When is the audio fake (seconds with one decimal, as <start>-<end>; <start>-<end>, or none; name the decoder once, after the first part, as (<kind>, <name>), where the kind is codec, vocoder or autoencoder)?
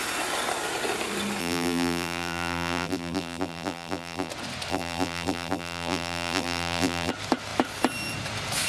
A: 1.4-4.3 (vocoder, BigVGAN v2); 4.7-7.1